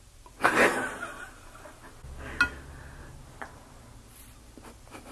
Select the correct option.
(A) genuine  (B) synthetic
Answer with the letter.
A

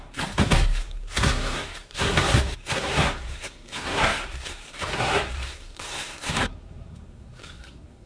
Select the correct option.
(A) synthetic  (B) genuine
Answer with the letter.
A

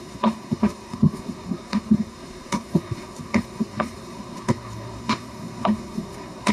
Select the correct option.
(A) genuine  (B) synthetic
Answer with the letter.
B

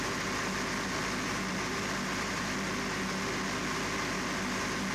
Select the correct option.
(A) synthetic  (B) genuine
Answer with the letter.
B